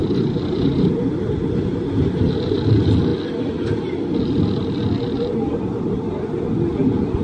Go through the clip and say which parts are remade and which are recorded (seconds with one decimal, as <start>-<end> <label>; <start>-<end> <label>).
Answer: 0.0-2.3 remade; 2.3-7.2 recorded